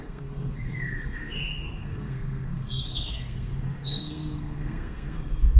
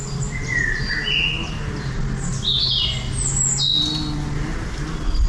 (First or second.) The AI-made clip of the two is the first